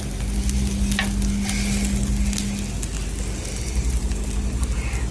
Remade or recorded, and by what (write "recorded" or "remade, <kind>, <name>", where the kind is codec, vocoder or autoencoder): recorded